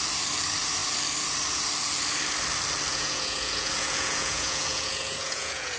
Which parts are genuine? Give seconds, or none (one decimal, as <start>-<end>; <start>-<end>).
0.0-2.9